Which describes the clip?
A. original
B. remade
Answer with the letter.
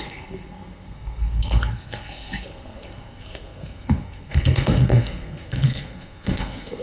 B